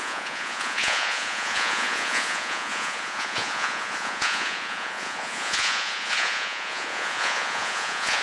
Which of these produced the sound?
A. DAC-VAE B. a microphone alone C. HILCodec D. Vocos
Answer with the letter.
D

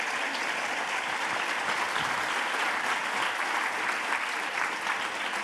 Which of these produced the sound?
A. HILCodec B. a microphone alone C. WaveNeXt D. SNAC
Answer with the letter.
B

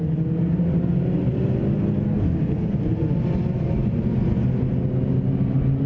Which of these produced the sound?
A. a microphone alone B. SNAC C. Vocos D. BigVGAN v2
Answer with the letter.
A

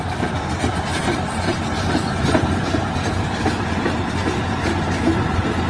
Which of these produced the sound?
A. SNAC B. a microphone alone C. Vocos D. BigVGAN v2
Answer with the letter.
B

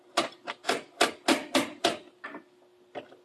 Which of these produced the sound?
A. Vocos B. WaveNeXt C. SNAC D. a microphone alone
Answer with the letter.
D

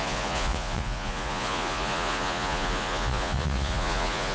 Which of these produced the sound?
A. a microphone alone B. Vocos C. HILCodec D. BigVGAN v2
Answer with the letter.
B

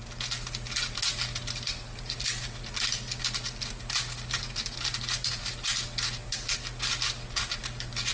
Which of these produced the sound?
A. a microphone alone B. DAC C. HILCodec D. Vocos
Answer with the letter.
A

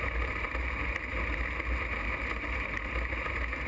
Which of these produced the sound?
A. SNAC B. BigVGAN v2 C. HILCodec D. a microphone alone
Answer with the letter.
D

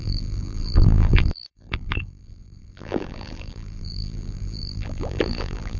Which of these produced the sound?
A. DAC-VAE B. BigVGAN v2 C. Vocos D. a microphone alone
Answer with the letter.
B